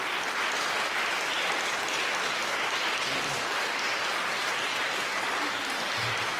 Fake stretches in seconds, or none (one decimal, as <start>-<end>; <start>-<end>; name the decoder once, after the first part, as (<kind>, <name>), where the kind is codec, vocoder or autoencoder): none